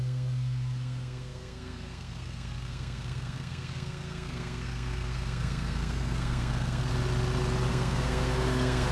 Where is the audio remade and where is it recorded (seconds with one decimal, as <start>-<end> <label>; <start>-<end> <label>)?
0.0-6.9 remade; 6.9-7.7 recorded; 7.7-8.9 remade